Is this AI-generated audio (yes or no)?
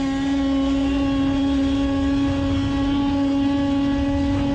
no